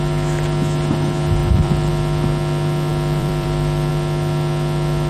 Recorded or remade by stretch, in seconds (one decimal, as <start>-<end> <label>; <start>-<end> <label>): 0.0-1.4 recorded; 1.4-1.9 remade; 1.9-2.9 recorded; 2.9-3.9 remade; 3.9-5.1 recorded